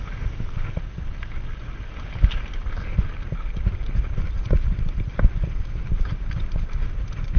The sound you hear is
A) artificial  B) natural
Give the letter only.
B